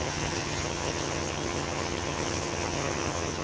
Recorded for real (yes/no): no